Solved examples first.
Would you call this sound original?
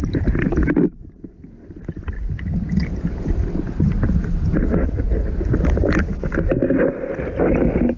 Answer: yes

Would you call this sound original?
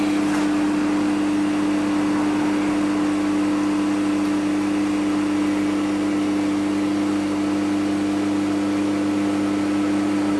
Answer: yes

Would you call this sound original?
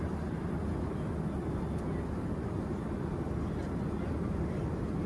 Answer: yes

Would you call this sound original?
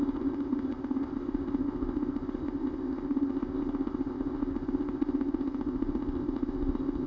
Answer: no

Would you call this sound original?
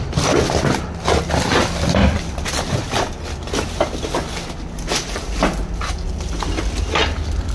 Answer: yes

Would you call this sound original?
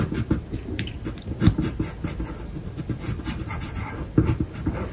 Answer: yes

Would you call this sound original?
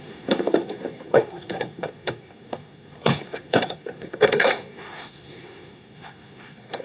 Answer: no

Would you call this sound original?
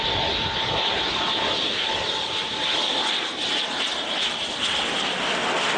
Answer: yes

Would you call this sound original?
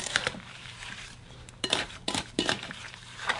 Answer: no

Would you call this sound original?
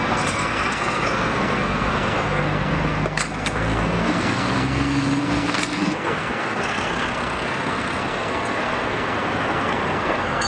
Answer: no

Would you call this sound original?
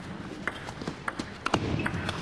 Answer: yes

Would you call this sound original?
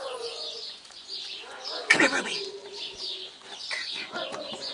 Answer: no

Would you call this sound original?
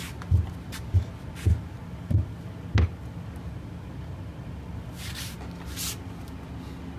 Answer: yes